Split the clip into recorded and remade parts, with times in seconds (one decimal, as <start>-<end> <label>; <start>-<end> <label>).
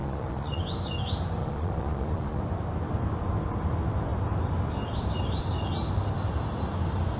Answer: 0.0-0.6 remade; 0.6-1.4 recorded; 1.4-2.4 remade; 2.4-7.2 recorded